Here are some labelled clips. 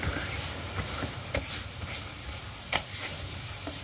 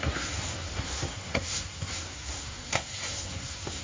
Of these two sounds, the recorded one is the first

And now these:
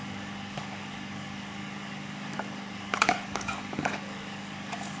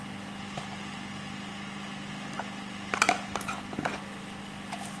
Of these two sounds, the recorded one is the second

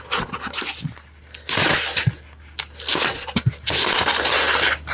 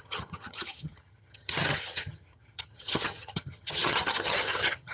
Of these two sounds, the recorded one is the first